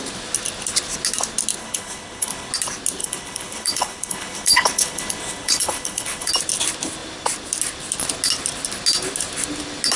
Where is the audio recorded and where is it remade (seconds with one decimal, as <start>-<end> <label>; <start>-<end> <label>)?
0.0-1.6 recorded; 1.6-2.5 remade; 2.5-3.0 recorded; 3.0-6.3 remade; 6.3-10.0 recorded